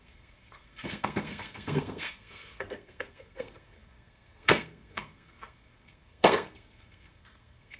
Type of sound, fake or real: fake